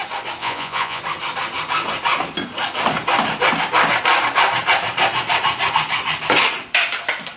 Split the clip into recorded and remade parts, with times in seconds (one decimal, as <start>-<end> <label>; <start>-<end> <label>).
0.0-0.4 recorded; 0.4-1.0 remade; 1.0-7.4 recorded